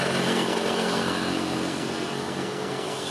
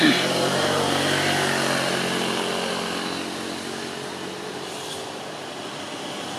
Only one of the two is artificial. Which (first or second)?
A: first